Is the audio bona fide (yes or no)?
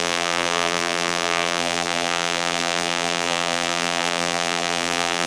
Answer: no